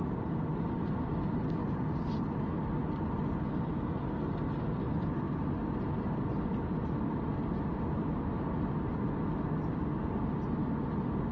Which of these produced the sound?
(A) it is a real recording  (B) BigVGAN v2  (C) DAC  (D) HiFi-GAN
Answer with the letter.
A